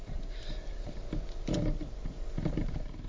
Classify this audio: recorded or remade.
remade